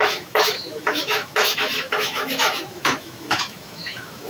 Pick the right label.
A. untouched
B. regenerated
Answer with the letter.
B